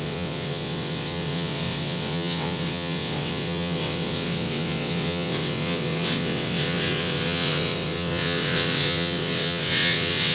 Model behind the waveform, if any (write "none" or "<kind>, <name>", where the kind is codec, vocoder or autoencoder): vocoder, WaveNeXt